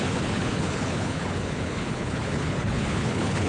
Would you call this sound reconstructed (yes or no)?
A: yes